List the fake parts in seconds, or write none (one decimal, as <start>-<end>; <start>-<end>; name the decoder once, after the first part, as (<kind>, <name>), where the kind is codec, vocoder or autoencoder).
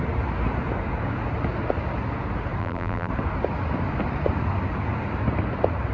2.6-3.1 (vocoder, BigVGAN v2)